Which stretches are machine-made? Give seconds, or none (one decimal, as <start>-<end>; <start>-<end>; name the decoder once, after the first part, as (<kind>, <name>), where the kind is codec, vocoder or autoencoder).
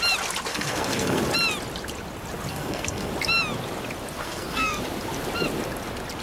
0.5-1.2 (codec, SNAC); 2.5-3.1; 4.2-4.8